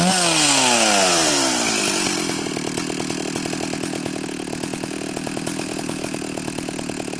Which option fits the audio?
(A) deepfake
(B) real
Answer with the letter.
B